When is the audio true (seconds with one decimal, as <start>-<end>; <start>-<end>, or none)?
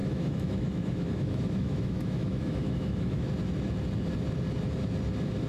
3.3-5.5